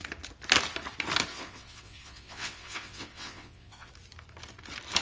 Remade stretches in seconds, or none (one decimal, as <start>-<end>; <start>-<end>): 1.3-3.9